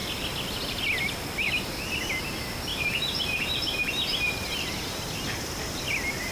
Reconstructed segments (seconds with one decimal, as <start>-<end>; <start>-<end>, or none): 2.7-4.9